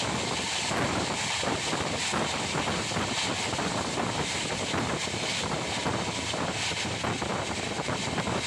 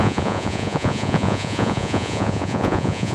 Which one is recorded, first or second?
first